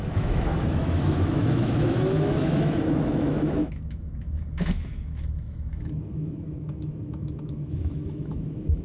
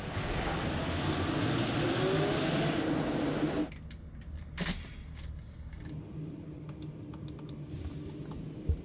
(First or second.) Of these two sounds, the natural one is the second